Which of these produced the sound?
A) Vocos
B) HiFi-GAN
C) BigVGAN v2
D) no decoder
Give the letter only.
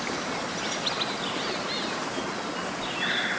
D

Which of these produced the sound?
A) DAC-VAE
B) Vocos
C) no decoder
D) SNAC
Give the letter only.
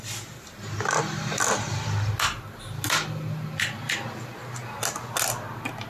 C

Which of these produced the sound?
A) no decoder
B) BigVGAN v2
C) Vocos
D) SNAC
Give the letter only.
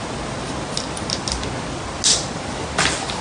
A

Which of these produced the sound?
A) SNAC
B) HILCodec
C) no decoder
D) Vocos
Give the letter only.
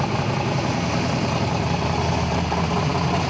C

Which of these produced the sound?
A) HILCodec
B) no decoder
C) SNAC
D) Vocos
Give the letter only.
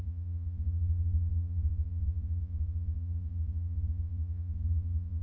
D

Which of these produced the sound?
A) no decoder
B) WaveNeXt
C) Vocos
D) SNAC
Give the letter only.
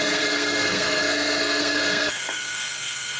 D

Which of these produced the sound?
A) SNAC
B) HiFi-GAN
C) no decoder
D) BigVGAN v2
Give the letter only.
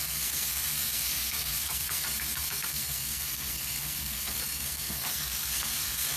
A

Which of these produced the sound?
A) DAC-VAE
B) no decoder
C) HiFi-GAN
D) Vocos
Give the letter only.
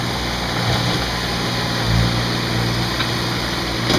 B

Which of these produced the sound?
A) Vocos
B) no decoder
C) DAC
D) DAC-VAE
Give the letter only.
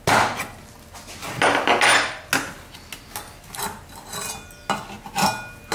B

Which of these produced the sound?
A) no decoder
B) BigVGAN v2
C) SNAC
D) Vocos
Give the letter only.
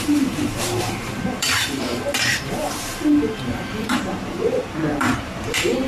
B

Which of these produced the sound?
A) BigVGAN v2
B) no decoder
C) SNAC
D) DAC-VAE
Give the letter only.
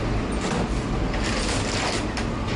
B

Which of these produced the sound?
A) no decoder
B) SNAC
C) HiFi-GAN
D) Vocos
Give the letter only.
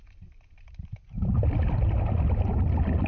A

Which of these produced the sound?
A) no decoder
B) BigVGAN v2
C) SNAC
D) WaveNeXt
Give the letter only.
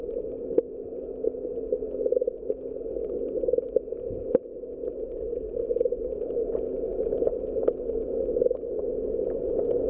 A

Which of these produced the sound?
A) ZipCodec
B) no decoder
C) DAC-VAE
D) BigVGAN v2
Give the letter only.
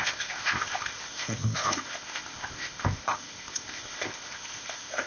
A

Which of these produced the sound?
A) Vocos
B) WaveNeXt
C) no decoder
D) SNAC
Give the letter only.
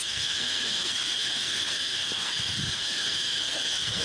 D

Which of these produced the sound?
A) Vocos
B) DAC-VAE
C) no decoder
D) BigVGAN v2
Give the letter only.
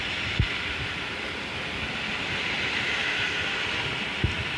C